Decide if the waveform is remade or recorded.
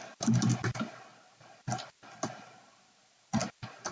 recorded